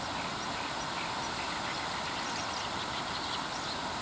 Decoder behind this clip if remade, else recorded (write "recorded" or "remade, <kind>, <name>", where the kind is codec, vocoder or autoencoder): recorded